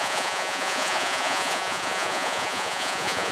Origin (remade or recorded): remade